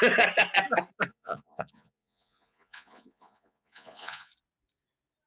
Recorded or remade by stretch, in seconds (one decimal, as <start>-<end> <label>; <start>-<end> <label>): 0.0-1.1 recorded; 1.1-4.3 remade; 4.3-5.3 recorded